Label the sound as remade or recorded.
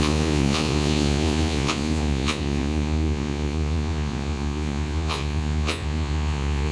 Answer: remade